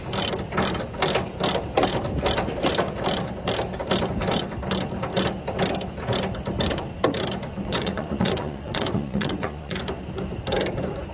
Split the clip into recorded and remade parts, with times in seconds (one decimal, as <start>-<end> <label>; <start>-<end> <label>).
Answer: 0.0-7.6 recorded; 7.6-9.8 remade; 9.8-11.1 recorded